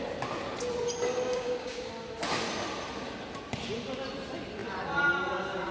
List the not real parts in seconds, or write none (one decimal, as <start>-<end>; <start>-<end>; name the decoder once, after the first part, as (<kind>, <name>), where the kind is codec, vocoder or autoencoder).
1.3-1.9 (codec, DAC)